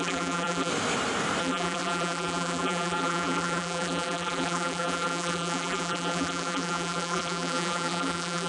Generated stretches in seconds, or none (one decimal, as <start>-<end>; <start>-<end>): 0.0-0.7; 1.4-8.5

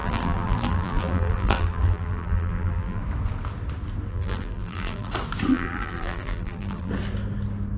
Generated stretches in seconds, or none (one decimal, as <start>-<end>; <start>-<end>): 0.0-3.0; 4.1-5.1; 5.5-6.9